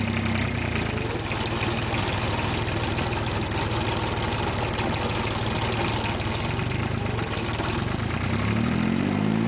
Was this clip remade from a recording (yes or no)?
no